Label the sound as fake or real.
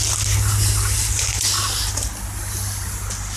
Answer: real